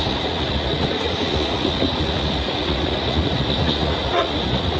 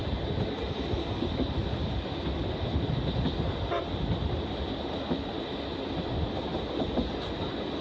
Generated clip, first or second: first